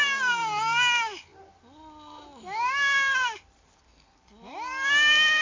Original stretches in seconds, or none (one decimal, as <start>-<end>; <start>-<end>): 0.0-5.4